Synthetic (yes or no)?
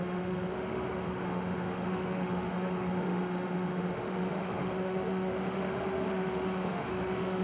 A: yes